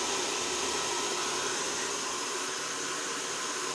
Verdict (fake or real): real